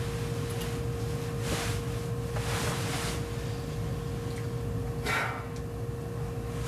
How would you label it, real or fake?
real